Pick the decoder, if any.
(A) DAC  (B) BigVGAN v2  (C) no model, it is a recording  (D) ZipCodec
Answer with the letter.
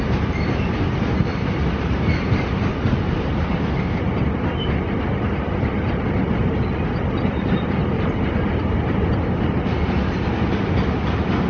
C